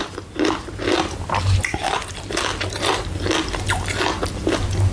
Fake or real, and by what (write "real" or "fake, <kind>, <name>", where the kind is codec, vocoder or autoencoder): real